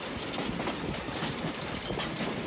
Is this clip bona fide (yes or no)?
yes